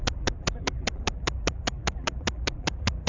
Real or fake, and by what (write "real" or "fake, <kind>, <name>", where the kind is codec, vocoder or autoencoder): fake, vocoder, BigVGAN v2